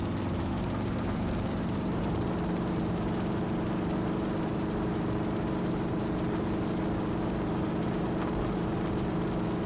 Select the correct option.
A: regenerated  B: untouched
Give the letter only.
A